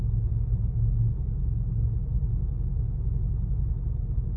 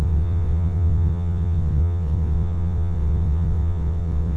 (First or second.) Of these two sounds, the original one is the first